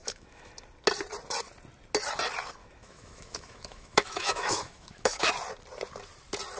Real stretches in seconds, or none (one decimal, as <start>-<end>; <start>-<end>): 0.5-2.6; 5.3-6.6